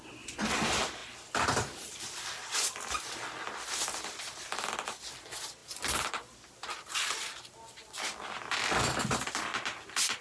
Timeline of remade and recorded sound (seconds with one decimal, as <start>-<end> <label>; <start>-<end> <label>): 0.0-10.2 recorded